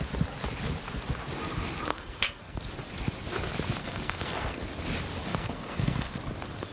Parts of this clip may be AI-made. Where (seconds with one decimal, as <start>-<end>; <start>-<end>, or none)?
1.9-2.6; 3.8-4.6; 5.3-6.2